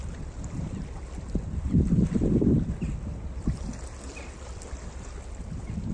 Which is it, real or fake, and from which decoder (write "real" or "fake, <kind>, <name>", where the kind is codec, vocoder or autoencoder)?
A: real